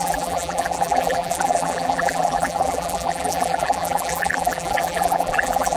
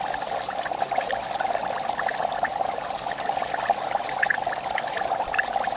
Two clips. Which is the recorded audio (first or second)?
second